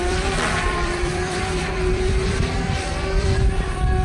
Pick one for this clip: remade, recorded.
remade